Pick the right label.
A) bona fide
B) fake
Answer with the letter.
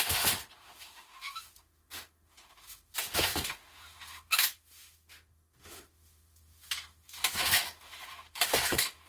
B